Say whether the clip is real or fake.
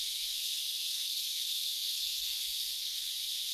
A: fake